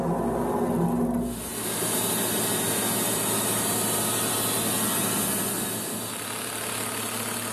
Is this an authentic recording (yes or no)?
yes